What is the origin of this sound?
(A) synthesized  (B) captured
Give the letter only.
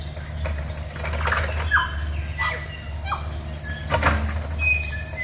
B